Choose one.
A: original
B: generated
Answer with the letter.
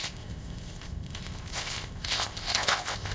B